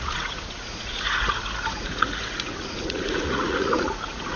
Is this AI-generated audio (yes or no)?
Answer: yes